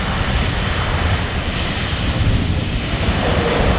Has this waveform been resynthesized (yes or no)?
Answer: no